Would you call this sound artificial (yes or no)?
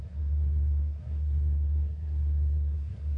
yes